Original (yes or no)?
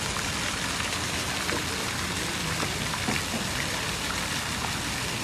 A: yes